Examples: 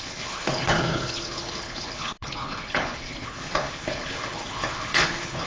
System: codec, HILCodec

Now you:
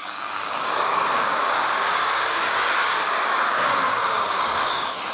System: codec, DAC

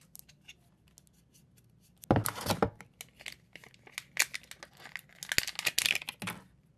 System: none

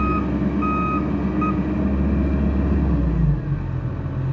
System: none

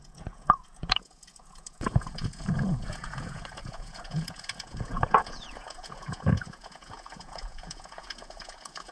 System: vocoder, Vocos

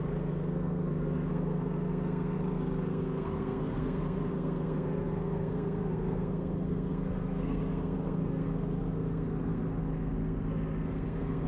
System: codec, SNAC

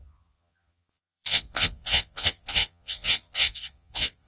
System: vocoder, Vocos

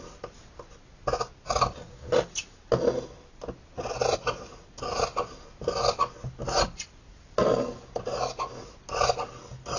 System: none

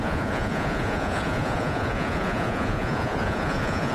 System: vocoder, Vocos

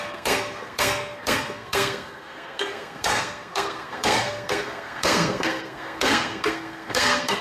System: codec, SNAC